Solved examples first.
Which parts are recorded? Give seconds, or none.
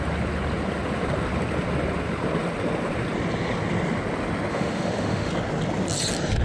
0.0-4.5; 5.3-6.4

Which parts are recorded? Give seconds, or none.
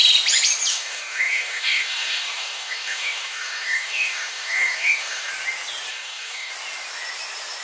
0.0-0.7; 5.3-5.9; 6.5-7.6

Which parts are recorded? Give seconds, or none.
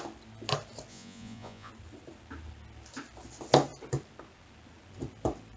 0.0-0.9; 1.7-5.6